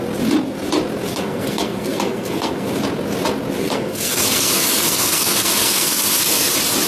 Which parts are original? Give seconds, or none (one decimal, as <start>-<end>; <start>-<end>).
0.0-1.1; 2.7-3.6; 6.5-6.9